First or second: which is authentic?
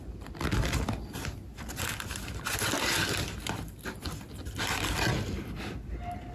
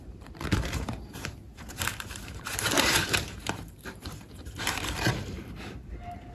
first